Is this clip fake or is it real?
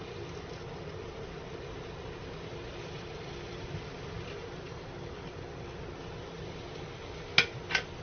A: real